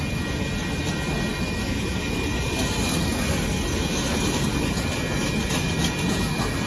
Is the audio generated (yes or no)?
no